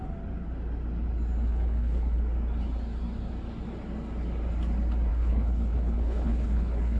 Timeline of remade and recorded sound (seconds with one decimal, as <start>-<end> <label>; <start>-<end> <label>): 0.0-1.5 recorded; 1.5-2.2 remade; 2.2-5.1 recorded; 5.1-7.0 remade